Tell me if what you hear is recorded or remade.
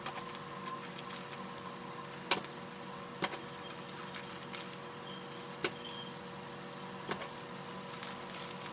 recorded